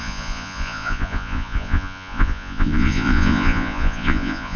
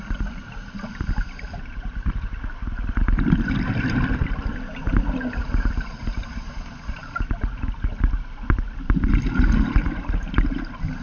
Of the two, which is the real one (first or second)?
second